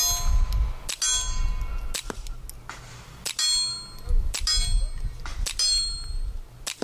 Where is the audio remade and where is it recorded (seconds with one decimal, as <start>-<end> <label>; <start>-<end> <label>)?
0.0-6.8 recorded